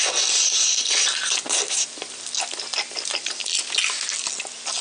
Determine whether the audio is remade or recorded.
recorded